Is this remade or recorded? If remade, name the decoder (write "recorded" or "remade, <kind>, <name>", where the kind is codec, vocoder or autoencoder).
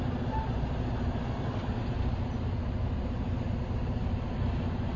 recorded